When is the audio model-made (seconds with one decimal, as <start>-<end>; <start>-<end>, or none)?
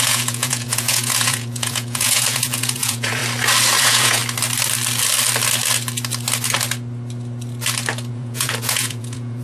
0.0-3.2; 3.8-4.2; 8.1-9.4